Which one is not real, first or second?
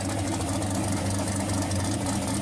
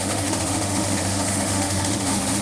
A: second